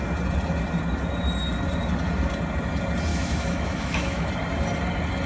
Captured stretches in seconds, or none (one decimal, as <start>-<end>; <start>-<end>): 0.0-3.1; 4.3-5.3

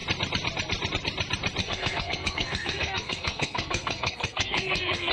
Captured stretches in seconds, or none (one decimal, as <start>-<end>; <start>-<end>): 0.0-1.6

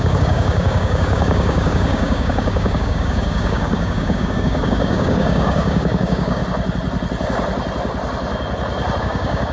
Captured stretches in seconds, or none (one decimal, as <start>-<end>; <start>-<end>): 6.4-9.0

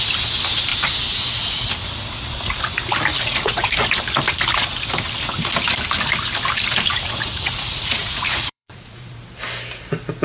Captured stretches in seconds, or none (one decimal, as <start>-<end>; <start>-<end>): 0.0-3.1; 3.7-6.9; 9.2-10.2

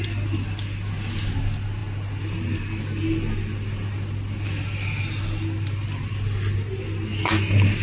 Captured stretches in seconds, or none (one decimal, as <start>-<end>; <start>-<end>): 0.0-7.8

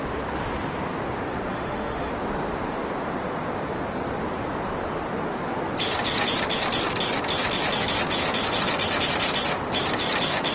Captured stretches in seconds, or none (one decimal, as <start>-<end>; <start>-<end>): 0.0-1.5; 2.1-10.5